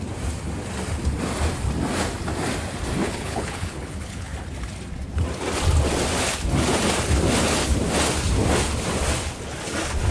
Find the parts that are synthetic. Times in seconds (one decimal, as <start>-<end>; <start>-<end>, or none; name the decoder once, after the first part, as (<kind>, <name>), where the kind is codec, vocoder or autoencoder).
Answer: 3.0-4.3 (codec, HILCodec)